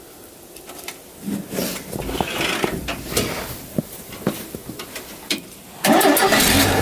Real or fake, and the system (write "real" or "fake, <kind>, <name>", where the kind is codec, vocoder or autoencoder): real